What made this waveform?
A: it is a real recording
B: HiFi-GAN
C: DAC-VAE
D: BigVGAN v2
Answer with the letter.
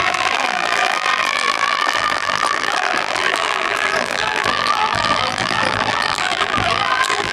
D